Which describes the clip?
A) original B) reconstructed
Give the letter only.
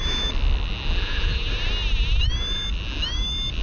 A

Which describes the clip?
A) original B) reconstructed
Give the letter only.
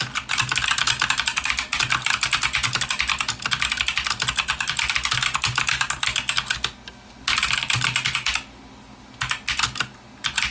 A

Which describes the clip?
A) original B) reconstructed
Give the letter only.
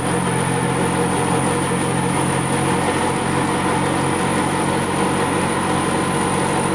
A